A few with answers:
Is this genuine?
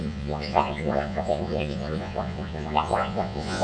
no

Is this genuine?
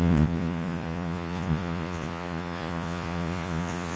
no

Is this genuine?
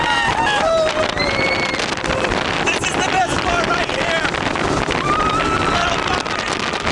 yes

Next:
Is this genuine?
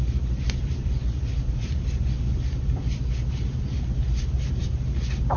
yes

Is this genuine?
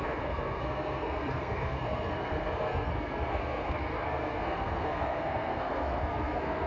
no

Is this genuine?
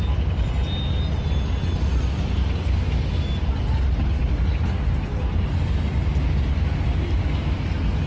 yes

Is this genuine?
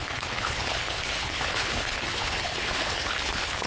no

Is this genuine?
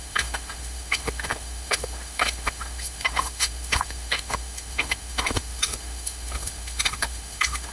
no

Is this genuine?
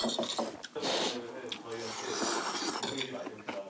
yes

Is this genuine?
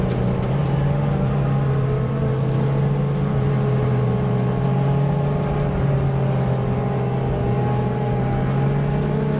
yes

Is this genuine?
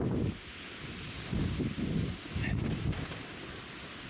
yes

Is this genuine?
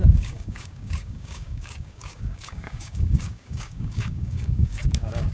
no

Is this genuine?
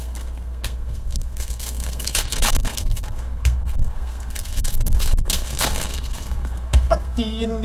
no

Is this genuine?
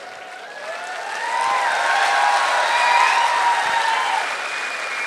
yes